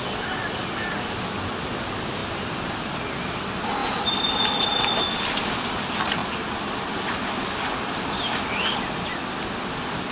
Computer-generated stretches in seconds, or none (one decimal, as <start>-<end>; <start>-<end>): none